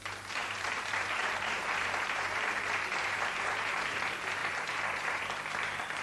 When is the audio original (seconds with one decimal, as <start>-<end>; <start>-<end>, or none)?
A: 0.0-0.4; 4.0-4.4; 5.2-6.0